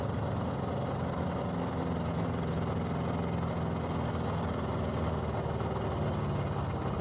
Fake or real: real